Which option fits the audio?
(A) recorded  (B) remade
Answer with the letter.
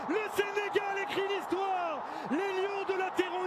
A